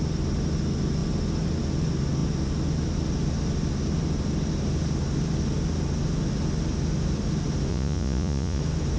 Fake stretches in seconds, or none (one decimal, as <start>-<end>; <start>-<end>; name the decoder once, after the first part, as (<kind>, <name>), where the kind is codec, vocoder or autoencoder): 7.7-8.6 (vocoder, Vocos)